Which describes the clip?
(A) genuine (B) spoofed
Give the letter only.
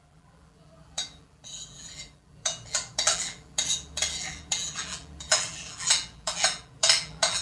B